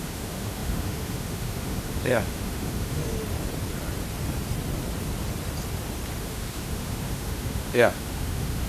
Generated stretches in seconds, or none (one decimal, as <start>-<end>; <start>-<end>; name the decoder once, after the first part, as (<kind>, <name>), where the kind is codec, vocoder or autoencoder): 0.0-3.0 (autoencoder, DAC-VAE); 6.2-8.7